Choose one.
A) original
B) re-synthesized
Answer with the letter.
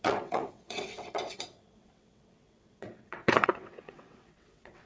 B